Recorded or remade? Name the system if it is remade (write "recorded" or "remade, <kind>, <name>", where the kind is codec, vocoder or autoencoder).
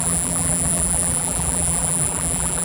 remade, vocoder, BigVGAN v2